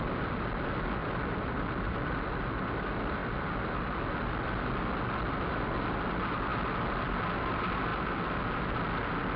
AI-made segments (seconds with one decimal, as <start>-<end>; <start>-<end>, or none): 1.0-2.3